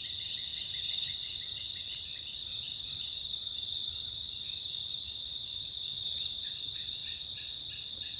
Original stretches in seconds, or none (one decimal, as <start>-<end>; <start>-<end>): 0.5-1.8; 7.0-8.2